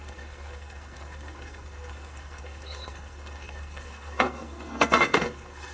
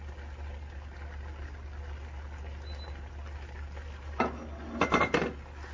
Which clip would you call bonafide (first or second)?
second